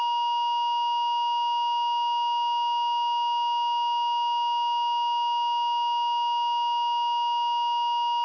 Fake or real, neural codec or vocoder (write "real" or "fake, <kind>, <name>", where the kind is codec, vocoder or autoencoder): real